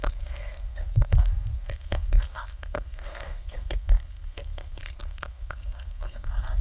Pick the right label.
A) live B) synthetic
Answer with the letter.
B